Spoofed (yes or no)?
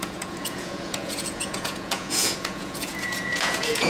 yes